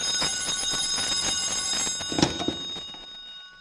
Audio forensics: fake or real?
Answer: real